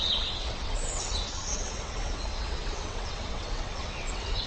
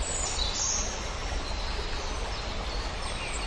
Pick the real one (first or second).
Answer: second